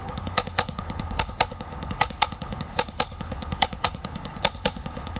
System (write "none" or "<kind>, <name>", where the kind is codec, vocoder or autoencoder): codec, HILCodec